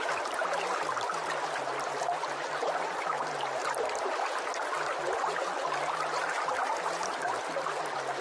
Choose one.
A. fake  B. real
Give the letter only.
B